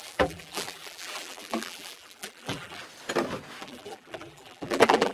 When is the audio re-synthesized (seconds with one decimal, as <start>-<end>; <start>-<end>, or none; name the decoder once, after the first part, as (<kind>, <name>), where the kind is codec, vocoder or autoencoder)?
0.0-2.8 (vocoder, BigVGAN v2); 3.6-5.1